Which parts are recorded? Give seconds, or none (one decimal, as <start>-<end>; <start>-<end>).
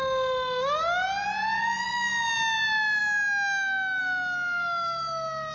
0.0-5.5